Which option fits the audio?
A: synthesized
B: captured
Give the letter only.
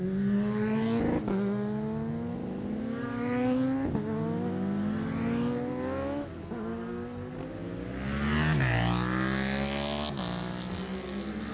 B